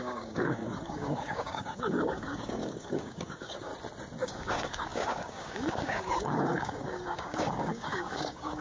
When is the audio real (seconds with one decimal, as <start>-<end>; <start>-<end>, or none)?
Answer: 3.7-4.2